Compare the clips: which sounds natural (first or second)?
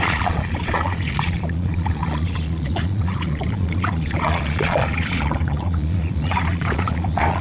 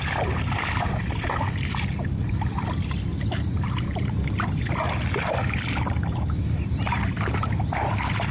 second